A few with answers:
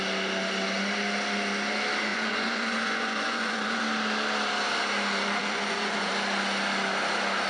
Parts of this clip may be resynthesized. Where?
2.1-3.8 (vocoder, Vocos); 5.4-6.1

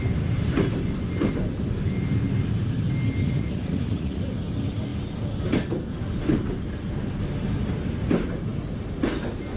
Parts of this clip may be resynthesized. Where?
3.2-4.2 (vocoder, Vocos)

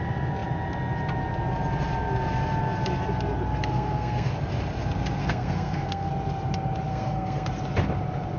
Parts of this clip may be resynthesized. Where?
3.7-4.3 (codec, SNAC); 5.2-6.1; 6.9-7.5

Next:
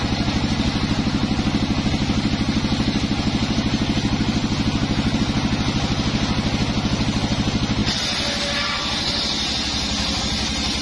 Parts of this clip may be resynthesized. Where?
none

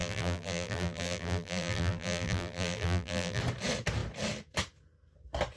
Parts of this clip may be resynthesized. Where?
0.0-3.4 (vocoder, BigVGAN v2)

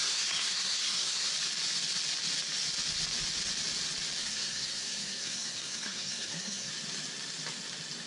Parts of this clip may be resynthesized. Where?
0.0-1.3 (codec, SNAC); 4.2-6.7

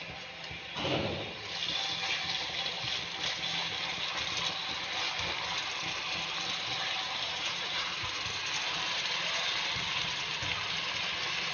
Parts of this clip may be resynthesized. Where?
7.3-8.2 (vocoder, Vocos)

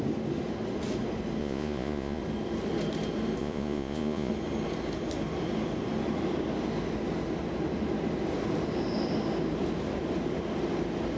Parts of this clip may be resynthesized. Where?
1.4-2.2 (vocoder, Vocos); 3.4-4.3